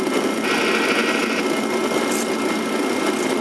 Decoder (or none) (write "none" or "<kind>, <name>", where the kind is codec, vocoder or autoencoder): none